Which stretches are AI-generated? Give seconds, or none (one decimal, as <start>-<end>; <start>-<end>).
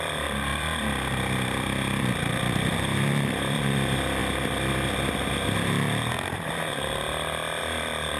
0.0-4.2; 7.6-8.2